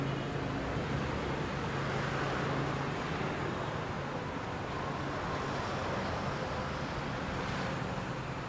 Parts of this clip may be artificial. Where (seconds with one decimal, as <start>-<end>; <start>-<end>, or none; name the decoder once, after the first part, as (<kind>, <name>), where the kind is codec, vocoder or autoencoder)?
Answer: none